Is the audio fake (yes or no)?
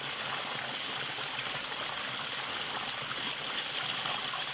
no